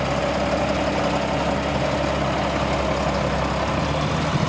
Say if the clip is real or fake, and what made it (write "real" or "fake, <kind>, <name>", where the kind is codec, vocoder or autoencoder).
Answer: real